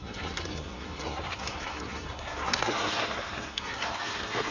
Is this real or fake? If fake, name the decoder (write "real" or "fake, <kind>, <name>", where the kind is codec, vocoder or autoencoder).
fake, codec, SNAC